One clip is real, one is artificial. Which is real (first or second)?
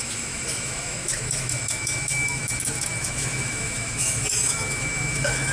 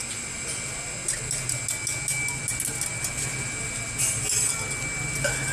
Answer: second